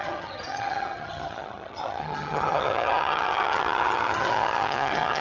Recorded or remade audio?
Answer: remade